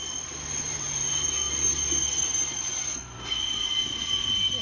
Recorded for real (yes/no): yes